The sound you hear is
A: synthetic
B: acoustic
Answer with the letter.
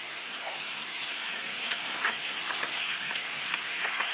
A